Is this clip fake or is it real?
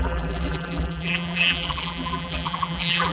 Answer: fake